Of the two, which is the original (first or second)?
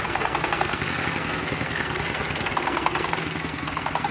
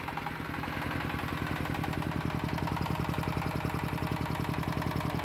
second